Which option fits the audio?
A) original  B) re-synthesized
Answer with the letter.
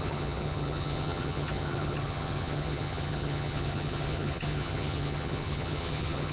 B